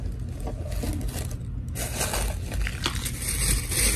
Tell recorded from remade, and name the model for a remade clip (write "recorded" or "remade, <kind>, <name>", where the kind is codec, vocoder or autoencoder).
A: recorded